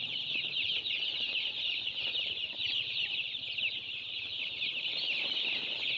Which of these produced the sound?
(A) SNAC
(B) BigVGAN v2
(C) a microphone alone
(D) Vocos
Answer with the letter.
B